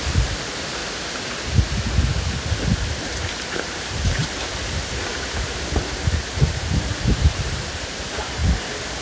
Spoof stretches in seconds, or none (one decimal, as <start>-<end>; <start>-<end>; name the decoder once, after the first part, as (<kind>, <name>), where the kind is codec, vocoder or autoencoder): 0.0-0.8 (vocoder, BigVGAN v2); 3.0-4.2; 6.3-8.4

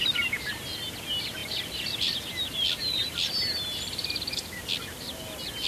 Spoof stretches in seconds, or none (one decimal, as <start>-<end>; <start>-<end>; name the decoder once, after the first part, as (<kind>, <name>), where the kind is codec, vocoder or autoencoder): 1.4-4.6 (vocoder, BigVGAN v2)